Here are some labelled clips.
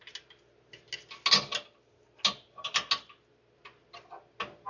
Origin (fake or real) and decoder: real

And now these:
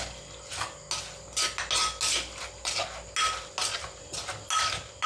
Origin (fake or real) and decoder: real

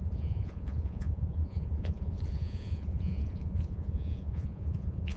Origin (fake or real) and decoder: fake, vocoder, Vocos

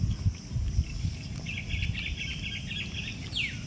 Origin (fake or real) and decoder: real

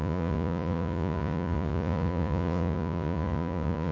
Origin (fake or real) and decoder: fake, vocoder, Vocos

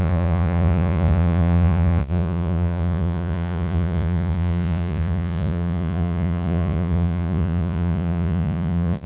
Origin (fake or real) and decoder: fake, vocoder, Vocos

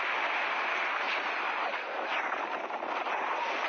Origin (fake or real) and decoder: real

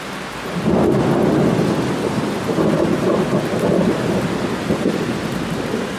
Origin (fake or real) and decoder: real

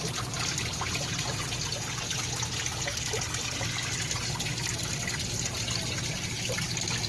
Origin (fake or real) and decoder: real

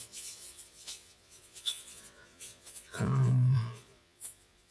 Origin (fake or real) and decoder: fake, vocoder, Vocos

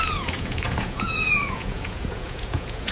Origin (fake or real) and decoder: fake, vocoder, Vocos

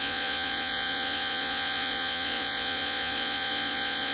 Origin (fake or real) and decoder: fake, vocoder, Vocos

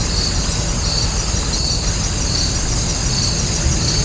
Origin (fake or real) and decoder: real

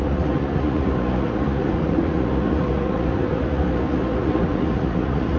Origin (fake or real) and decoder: fake, vocoder, Vocos